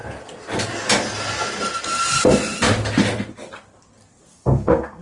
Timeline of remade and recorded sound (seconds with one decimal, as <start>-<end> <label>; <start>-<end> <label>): 0.0-4.3 recorded; 4.3-5.0 remade

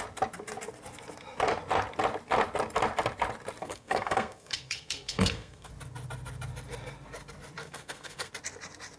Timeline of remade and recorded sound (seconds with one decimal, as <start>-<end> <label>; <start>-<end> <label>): 0.0-3.6 recorded; 3.6-5.7 remade; 5.7-7.6 recorded; 7.6-8.3 remade; 8.3-9.0 recorded